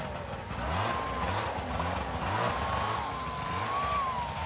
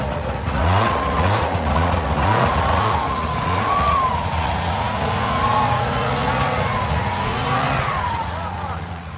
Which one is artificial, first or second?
second